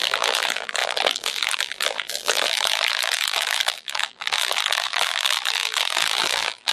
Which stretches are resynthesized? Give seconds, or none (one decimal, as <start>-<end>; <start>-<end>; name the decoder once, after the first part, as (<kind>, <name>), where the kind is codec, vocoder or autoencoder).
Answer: 0.0-6.7 (vocoder, BigVGAN v2)